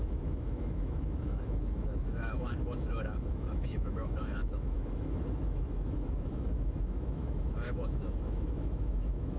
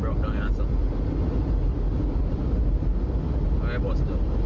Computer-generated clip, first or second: first